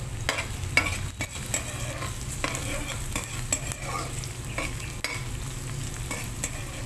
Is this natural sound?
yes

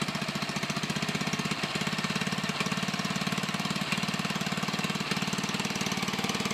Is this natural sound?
yes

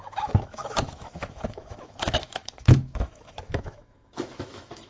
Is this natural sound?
no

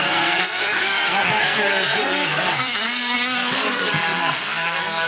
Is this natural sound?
no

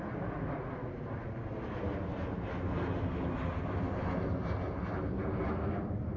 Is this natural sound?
yes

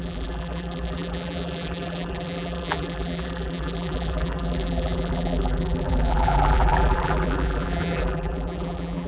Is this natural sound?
no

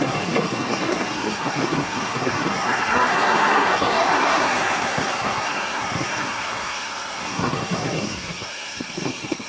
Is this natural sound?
no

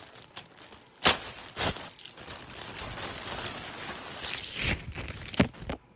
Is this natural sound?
yes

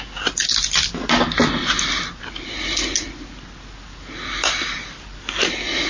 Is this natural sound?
yes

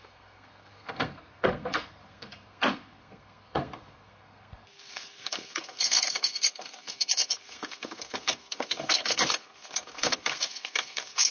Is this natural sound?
no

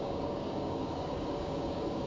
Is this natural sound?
no